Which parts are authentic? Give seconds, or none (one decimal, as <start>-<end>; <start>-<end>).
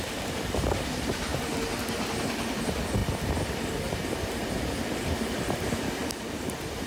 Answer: 0.0-6.9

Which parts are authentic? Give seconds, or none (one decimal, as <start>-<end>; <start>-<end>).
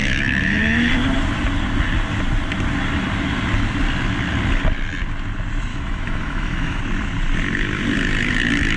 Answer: 0.9-5.7; 6.8-8.8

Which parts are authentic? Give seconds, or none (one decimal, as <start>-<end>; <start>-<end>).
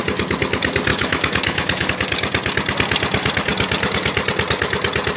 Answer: 0.0-0.9; 1.9-5.2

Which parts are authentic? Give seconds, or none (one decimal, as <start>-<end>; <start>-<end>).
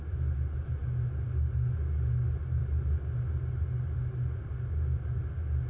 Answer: 0.0-5.7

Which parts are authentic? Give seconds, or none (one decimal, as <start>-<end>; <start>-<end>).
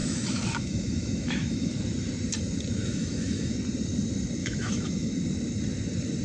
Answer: 1.8-2.8; 3.5-4.4; 5.1-6.2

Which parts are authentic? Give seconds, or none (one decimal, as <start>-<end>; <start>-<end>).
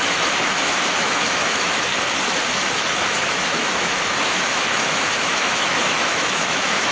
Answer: 1.9-2.5